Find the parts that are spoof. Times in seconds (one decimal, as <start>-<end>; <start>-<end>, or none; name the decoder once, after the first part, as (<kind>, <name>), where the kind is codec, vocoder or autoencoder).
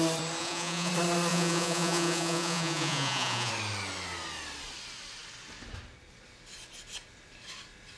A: 0.4-0.9 (vocoder, Vocos); 1.3-3.5